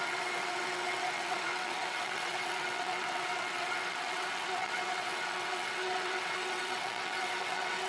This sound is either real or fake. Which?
fake